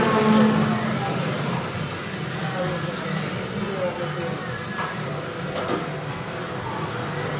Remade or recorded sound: recorded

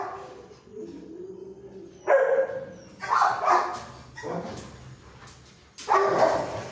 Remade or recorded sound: recorded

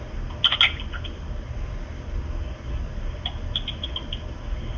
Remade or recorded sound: recorded